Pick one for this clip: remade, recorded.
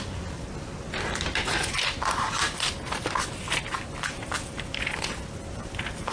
recorded